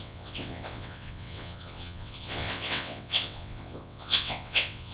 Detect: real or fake fake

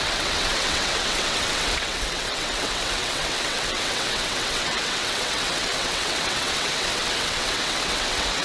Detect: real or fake fake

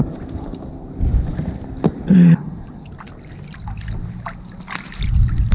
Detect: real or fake real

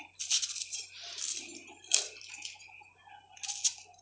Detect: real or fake real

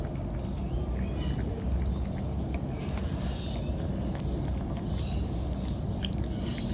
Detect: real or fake real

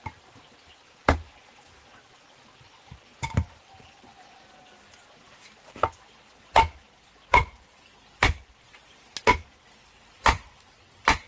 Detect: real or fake real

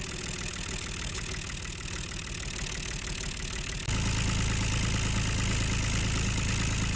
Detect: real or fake real